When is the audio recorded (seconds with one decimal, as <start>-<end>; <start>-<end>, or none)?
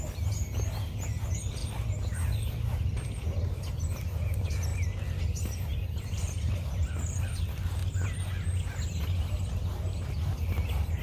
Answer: 0.0-1.6; 3.7-5.7; 6.5-11.0